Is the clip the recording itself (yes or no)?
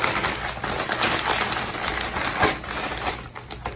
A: yes